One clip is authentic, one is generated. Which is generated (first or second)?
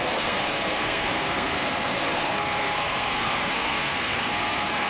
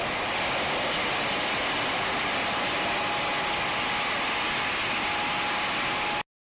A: first